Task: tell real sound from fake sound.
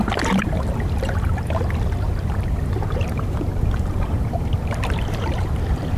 fake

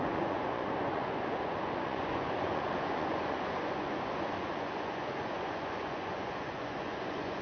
fake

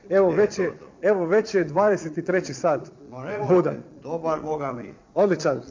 fake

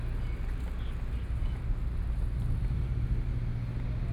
real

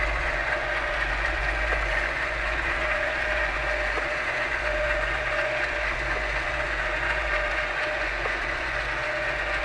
fake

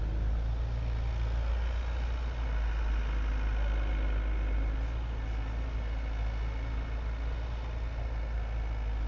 real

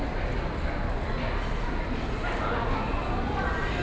real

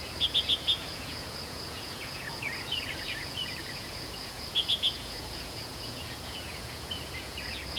fake